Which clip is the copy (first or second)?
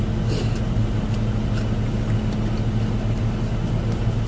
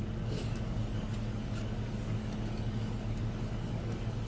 second